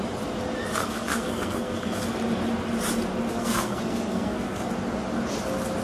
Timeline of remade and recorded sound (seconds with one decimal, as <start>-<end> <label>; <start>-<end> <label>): 0.0-0.8 recorded; 0.8-2.0 remade; 2.0-3.3 recorded; 3.3-4.7 remade; 4.7-5.8 recorded